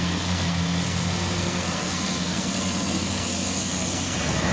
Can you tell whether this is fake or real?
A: fake